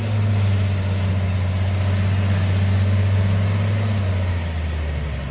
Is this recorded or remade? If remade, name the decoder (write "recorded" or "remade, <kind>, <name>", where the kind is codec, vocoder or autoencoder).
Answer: recorded